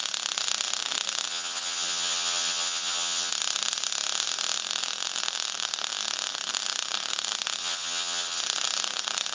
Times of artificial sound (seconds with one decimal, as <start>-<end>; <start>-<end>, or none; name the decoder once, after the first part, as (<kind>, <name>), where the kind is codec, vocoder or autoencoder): 1.3-3.3 (vocoder, HiFi-GAN); 7.6-8.4